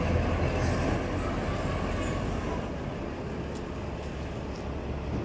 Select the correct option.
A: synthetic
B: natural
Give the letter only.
B